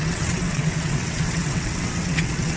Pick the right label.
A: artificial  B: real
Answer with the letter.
A